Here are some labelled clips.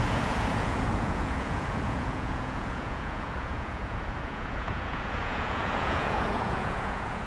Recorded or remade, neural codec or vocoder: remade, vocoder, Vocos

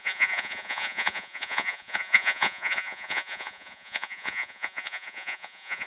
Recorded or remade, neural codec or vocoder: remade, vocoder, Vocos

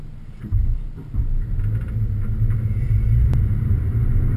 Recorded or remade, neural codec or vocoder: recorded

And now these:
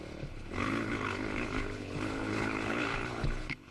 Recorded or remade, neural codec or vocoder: remade, codec, HILCodec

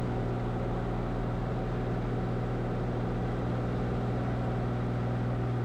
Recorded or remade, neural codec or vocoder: recorded